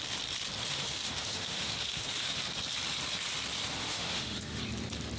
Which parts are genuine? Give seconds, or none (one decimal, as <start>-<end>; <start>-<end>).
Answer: 0.0-0.7; 2.4-3.8; 4.6-5.2